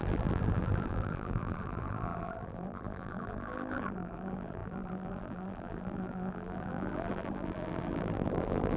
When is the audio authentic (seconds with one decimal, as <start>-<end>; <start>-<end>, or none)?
none